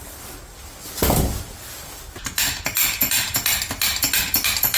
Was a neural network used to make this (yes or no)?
no